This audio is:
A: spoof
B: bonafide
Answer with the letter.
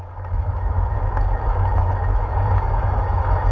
A